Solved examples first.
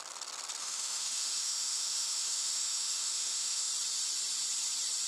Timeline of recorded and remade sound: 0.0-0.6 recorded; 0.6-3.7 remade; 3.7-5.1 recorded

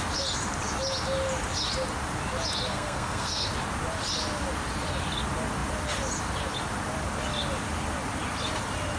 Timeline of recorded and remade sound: 0.0-2.7 recorded; 2.7-3.5 remade; 3.5-9.0 recorded